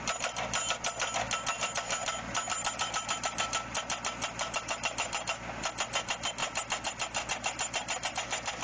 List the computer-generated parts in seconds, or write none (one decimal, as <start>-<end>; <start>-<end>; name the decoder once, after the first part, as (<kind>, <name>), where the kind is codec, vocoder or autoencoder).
none